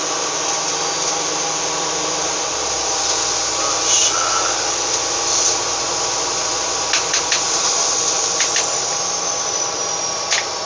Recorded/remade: recorded